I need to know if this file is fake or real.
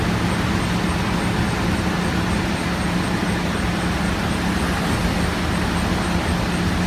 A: real